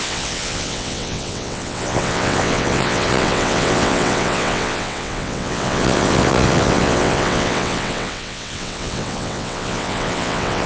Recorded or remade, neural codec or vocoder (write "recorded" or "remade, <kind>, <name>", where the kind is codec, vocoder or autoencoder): remade, vocoder, WaveNeXt